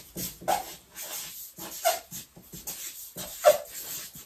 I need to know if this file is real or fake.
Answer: real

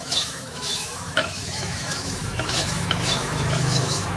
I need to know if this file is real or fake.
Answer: fake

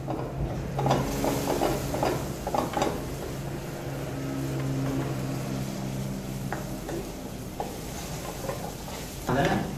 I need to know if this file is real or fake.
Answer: real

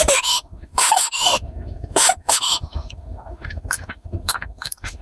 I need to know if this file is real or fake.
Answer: fake